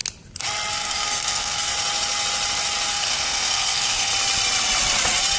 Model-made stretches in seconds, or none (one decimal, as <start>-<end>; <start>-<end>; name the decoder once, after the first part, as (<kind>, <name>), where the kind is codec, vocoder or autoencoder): 0.7-1.7 (codec, SNAC); 2.9-4.1